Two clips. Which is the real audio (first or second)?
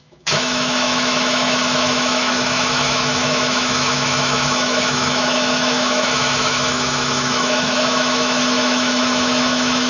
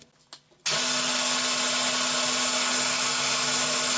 second